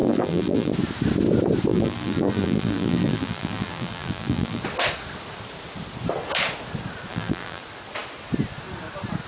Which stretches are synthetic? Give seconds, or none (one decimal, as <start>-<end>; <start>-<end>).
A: 0.0-0.7; 1.7-4.6; 7.1-7.6